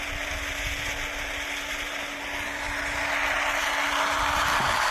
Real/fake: real